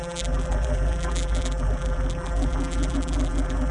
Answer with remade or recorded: remade